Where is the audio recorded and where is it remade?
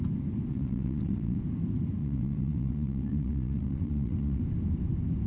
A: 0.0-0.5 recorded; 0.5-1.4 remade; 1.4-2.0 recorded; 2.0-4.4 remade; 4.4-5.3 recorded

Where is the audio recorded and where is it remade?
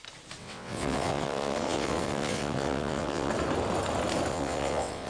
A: 0.0-0.4 recorded; 0.4-3.3 remade; 3.3-4.3 recorded; 4.3-5.1 remade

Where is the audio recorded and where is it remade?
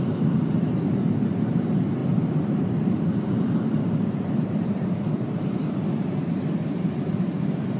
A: 0.0-7.8 remade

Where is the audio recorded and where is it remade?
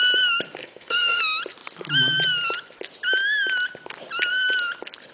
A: 0.0-0.6 recorded; 0.6-1.2 remade; 1.2-5.1 recorded